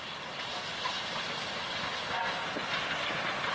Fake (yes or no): no